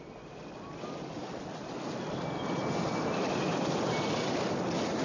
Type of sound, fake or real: real